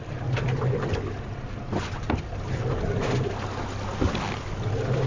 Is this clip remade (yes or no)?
no